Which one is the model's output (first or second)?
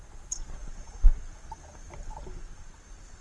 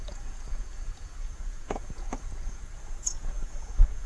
second